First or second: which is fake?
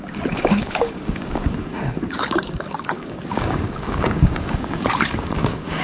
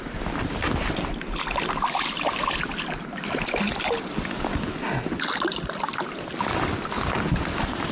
first